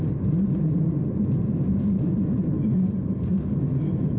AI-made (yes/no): no